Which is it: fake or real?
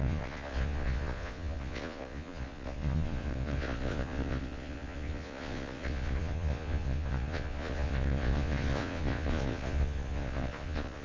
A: fake